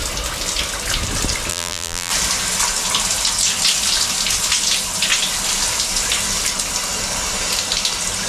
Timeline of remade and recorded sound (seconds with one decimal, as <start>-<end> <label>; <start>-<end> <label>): 0.0-1.5 recorded; 1.5-2.1 remade; 2.1-8.3 recorded